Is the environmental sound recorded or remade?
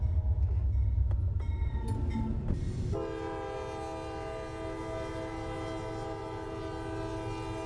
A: recorded